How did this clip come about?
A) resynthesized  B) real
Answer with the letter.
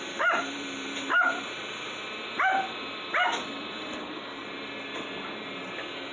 A